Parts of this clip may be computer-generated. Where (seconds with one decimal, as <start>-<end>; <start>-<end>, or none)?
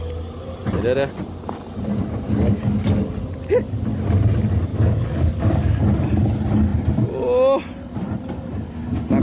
4.7-5.8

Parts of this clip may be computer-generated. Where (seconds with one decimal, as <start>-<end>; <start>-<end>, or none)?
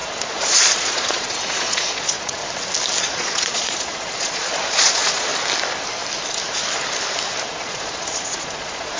0.0-2.4; 3.0-5.3; 7.6-9.0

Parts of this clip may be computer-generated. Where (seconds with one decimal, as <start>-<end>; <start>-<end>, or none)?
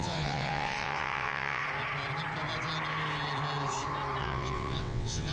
0.0-1.6; 4.2-5.3